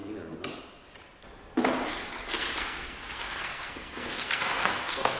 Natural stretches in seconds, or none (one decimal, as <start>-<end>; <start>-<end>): 0.0-1.9